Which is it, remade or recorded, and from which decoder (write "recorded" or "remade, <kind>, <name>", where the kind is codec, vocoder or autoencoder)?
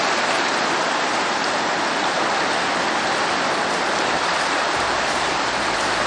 recorded